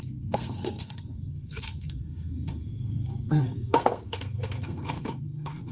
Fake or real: fake